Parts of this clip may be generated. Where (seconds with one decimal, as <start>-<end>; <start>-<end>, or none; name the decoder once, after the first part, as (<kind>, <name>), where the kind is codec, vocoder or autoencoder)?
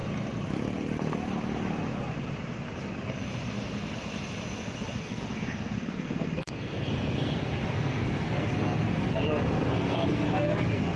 5.0-11.0 (codec, SNAC)